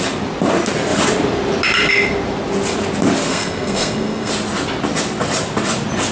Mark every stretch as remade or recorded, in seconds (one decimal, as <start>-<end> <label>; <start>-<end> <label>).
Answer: 0.0-3.3 recorded; 3.3-4.3 remade; 4.3-6.1 recorded